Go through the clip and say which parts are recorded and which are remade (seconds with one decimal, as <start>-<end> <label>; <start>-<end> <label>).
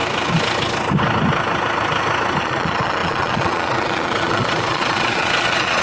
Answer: 0.0-2.4 recorded; 2.4-5.8 remade